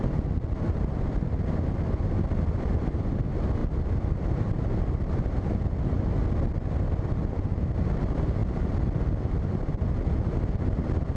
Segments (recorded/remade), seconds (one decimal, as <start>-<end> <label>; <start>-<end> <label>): 0.0-11.2 recorded